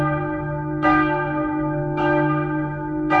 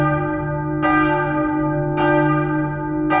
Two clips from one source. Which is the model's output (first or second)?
first